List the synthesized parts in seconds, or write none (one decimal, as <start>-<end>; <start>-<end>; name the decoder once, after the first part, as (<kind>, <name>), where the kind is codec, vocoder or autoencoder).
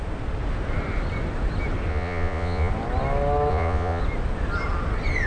1.9-2.7 (vocoder, Vocos); 3.5-4.0